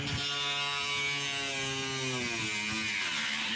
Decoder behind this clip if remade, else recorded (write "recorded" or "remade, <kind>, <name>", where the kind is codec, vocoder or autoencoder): recorded